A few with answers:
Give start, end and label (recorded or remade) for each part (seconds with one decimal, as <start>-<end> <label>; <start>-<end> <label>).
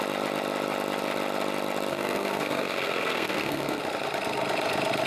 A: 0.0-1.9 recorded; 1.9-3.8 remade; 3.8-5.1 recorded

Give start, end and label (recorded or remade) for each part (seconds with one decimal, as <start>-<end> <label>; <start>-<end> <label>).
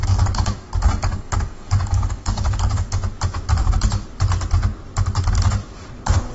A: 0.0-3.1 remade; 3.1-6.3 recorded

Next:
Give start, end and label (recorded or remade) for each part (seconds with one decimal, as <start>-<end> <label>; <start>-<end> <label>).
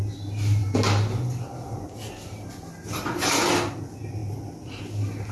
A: 0.0-5.3 recorded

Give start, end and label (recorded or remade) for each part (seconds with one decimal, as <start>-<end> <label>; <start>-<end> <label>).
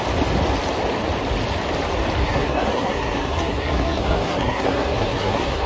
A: 0.0-2.2 recorded; 2.2-5.7 remade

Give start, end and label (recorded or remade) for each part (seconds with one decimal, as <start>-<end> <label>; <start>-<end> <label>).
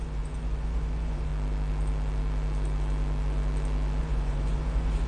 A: 0.0-1.3 remade; 1.3-4.0 recorded; 4.0-5.1 remade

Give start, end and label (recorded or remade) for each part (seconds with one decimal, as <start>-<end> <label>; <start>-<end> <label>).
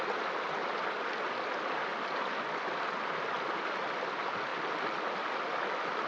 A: 0.0-6.1 recorded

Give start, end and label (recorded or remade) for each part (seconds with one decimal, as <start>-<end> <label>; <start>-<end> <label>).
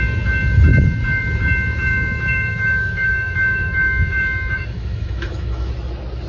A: 0.0-1.9 recorded; 1.9-5.7 remade; 5.7-6.3 recorded